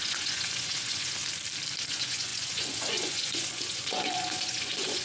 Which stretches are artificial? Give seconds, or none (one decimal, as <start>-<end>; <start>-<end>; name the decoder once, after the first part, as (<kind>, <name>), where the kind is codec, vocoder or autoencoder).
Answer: 0.0-1.2 (vocoder, Vocos); 1.9-5.0